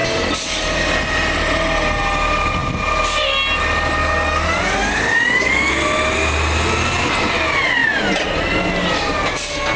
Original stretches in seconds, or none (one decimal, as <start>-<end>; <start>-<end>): 0.0-4.0; 5.7-9.8